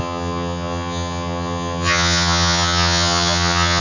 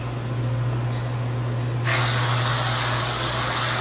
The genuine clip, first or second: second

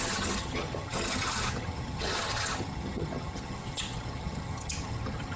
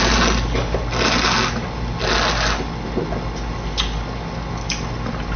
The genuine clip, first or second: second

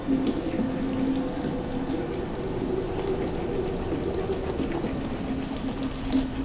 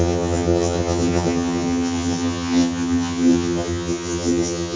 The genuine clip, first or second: first